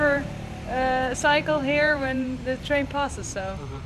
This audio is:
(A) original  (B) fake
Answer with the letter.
B